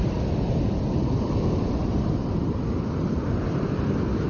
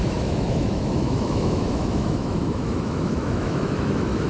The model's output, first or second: second